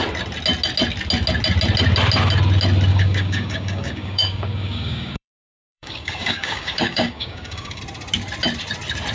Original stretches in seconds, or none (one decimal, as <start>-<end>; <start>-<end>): 0.0-2.9; 7.8-9.1